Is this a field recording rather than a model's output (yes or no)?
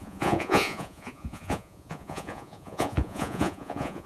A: no